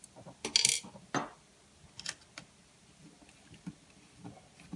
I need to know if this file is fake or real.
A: real